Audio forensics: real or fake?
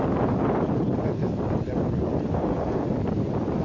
real